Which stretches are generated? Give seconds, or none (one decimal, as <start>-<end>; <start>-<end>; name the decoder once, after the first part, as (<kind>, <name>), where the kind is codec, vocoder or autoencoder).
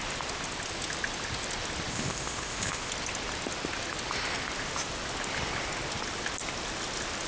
1.9-2.9 (codec, ZipCodec)